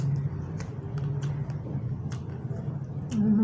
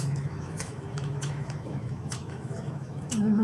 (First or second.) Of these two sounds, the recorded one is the first